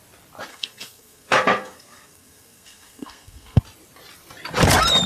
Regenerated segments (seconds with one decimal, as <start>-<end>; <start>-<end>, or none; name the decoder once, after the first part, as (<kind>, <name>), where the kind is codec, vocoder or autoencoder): 0.5-3.6 (codec, SNAC)